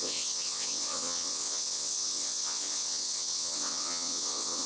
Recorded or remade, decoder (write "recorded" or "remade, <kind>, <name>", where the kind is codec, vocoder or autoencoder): remade, vocoder, WaveNeXt